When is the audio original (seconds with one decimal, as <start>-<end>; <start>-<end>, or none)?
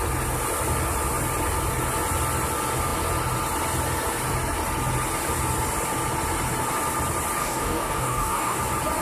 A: 0.0-7.4; 8.6-9.0